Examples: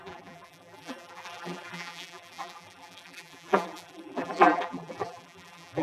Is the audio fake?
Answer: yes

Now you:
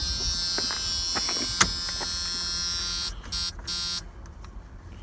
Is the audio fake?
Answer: no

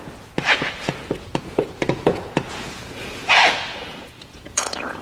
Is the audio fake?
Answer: yes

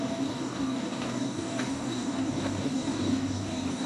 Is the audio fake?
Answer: yes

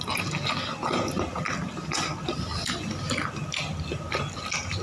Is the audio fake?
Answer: no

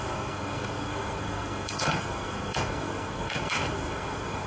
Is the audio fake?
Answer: yes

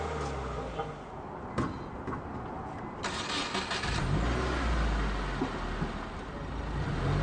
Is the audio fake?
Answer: no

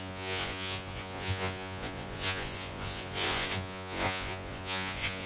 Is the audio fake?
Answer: yes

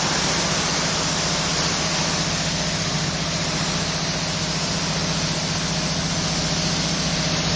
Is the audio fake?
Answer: no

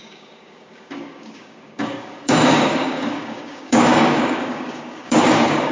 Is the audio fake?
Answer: yes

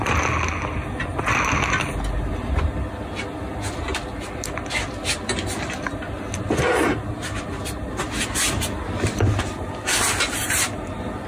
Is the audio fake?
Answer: no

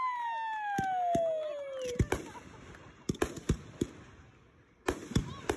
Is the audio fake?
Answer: no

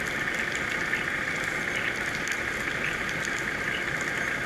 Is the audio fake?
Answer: no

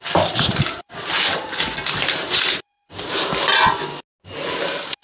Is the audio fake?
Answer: no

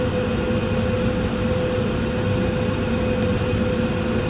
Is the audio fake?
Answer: no